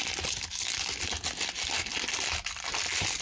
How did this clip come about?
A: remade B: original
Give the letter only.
B